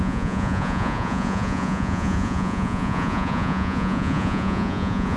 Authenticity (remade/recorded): remade